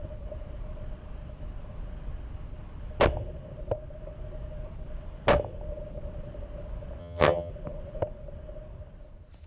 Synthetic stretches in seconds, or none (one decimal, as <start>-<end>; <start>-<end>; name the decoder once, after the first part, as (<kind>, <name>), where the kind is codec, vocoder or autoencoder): 7.0-7.5 (vocoder, HiFi-GAN)